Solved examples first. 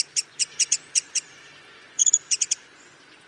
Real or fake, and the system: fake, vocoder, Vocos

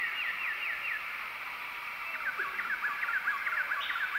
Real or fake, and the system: real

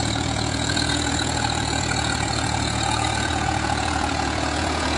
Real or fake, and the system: fake, vocoder, Vocos